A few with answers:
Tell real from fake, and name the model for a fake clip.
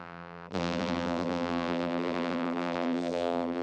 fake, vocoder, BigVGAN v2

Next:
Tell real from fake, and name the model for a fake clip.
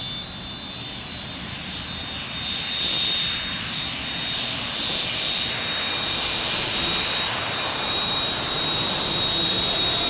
fake, vocoder, BigVGAN v2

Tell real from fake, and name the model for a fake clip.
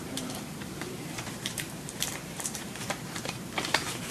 fake, vocoder, BigVGAN v2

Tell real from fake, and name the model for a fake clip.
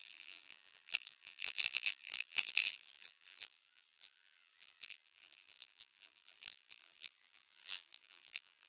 fake, vocoder, BigVGAN v2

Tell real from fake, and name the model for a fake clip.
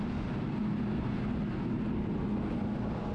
real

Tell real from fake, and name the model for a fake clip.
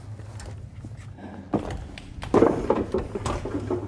real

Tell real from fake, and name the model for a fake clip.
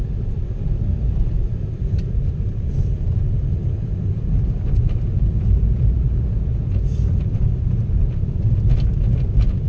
fake, vocoder, BigVGAN v2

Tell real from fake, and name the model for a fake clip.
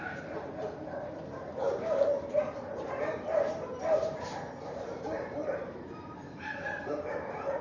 fake, vocoder, BigVGAN v2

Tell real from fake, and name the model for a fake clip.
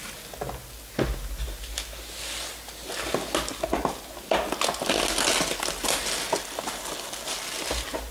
real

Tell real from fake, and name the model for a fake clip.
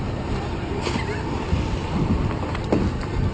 real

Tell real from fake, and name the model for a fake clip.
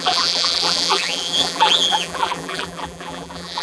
fake, vocoder, BigVGAN v2